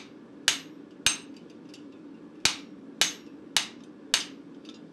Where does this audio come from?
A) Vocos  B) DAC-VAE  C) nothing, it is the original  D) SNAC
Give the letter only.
C